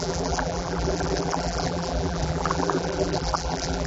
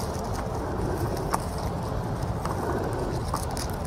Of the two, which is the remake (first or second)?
first